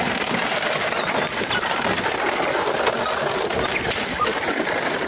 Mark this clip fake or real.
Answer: real